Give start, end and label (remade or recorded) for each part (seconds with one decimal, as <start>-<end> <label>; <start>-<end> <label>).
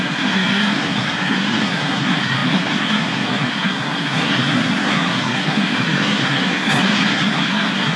0.0-8.0 remade